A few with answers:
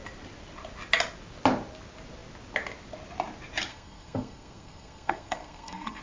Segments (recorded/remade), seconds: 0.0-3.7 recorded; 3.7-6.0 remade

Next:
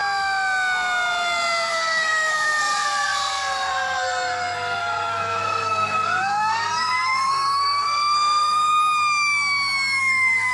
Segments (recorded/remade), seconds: 0.0-1.7 recorded; 1.7-8.8 remade; 8.8-10.0 recorded; 10.0-10.5 remade

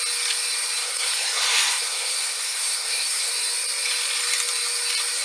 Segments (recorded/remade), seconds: 0.0-0.8 recorded; 0.8-3.3 remade; 3.3-5.2 recorded

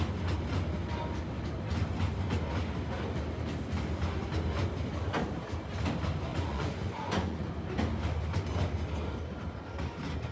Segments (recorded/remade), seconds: 0.0-6.3 recorded; 6.3-7.5 remade; 7.5-10.3 recorded

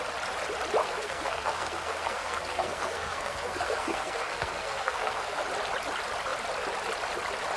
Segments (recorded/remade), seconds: 0.0-0.8 recorded; 0.8-5.4 remade; 5.4-7.6 recorded

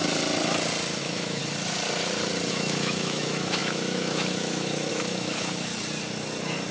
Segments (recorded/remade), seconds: 0.0-1.0 recorded; 1.0-1.4 remade; 1.4-2.5 recorded; 2.5-5.7 remade; 5.7-6.7 recorded